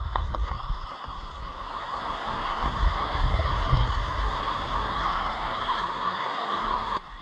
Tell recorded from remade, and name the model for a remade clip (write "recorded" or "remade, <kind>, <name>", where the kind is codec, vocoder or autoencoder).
remade, codec, SNAC